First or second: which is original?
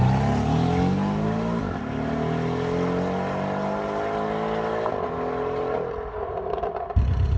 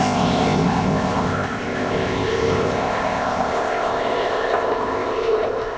first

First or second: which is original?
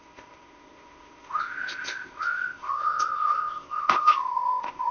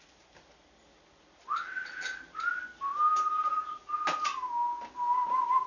second